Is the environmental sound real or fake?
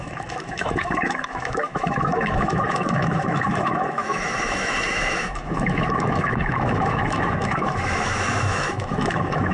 fake